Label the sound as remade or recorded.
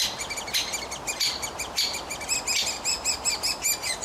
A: recorded